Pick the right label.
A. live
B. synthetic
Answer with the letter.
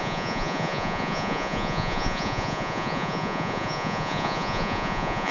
B